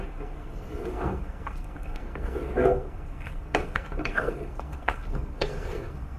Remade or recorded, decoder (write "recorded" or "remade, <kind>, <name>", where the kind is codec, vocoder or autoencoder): remade, codec, SNAC